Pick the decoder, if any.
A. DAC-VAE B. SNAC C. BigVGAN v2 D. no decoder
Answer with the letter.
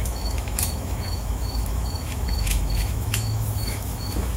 A